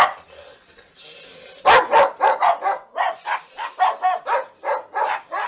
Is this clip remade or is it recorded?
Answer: recorded